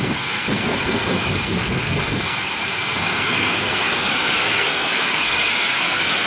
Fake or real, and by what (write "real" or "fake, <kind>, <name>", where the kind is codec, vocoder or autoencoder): fake, codec, SNAC